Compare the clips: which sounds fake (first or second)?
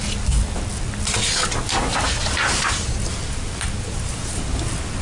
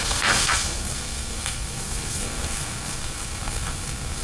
second